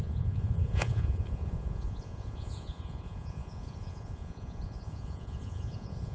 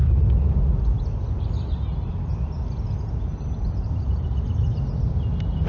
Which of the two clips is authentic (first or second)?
second